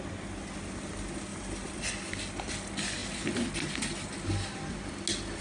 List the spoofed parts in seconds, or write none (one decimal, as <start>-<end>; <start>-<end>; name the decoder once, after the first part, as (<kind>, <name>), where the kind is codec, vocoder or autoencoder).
1.3-1.9 (vocoder, BigVGAN v2)